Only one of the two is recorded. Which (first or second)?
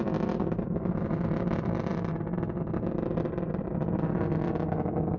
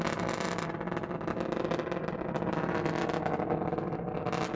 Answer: second